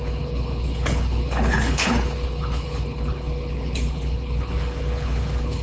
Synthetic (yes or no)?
yes